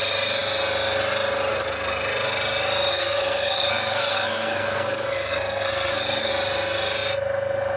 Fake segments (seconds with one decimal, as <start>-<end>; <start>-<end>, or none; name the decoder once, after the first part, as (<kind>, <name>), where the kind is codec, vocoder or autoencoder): 2.9-6.3 (codec, SNAC)